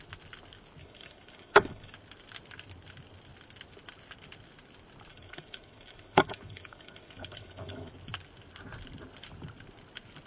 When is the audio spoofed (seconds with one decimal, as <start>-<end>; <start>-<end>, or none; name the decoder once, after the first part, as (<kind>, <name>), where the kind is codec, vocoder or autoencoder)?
0.8-1.9 (codec, DAC); 5.1-7.9